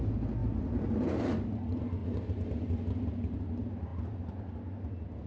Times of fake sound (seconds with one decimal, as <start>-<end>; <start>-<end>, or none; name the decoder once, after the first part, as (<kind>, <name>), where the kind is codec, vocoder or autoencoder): none